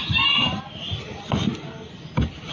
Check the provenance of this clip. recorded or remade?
recorded